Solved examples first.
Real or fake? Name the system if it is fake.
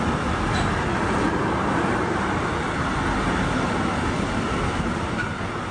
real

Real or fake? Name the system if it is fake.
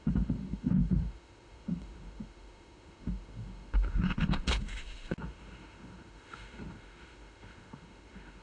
fake, autoencoder, DAC-VAE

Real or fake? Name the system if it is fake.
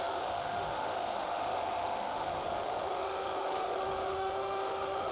fake, autoencoder, DAC-VAE